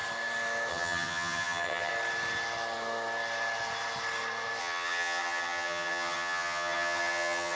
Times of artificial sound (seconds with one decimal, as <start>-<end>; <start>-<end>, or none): 0.7-1.9; 4.6-7.6